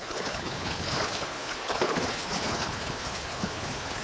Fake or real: fake